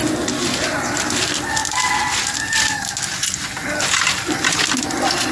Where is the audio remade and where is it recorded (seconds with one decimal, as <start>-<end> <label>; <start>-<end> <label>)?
0.0-1.6 remade; 1.6-4.8 recorded; 4.8-5.3 remade